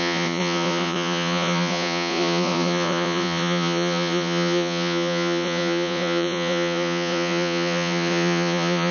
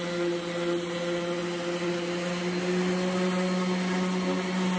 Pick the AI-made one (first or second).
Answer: first